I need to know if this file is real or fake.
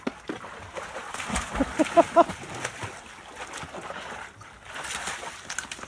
real